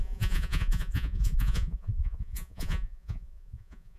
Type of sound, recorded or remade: remade